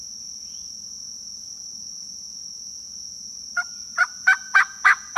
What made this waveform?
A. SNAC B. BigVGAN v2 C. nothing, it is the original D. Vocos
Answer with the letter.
D